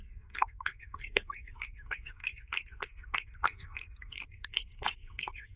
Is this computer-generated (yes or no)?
yes